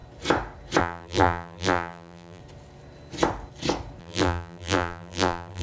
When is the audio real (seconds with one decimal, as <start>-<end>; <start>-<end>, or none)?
0.0-0.8; 2.4-4.0